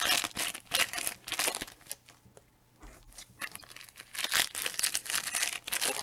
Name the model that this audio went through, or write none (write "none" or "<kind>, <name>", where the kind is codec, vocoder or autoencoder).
none